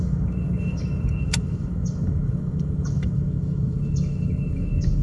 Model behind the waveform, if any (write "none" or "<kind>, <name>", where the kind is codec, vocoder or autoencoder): autoencoder, DAC-VAE